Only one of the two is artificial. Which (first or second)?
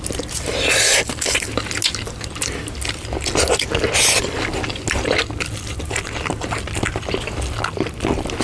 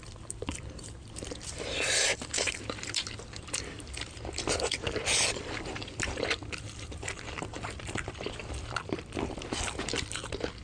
second